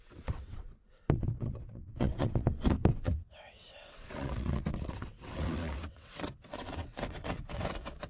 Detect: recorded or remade remade